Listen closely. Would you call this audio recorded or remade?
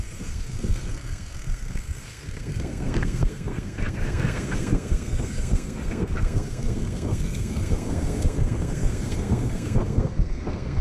remade